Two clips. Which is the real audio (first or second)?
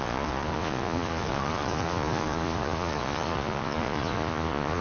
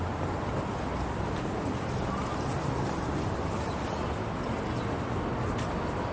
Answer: second